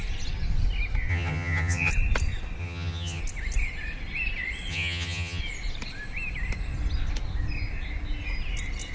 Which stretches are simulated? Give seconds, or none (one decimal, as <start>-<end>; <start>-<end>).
1.1-1.9; 2.6-3.2; 4.7-5.4